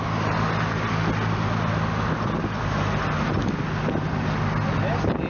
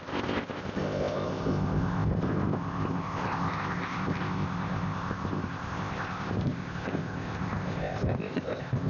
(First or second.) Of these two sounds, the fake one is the second